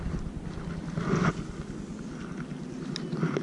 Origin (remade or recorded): recorded